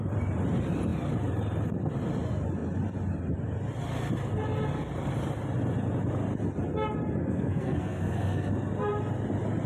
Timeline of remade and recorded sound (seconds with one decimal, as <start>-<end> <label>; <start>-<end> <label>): 0.0-7.2 recorded; 7.2-8.5 remade; 8.5-9.7 recorded